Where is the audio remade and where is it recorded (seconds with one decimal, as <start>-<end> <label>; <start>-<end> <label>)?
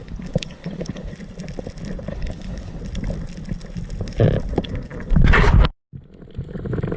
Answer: 0.0-1.1 remade; 1.1-2.1 recorded; 2.1-2.8 remade; 2.8-7.0 recorded